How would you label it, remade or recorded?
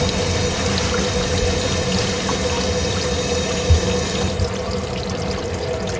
recorded